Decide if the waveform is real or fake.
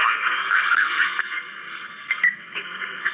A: fake